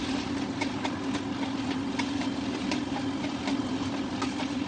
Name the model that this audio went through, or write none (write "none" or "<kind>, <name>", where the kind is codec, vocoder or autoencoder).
none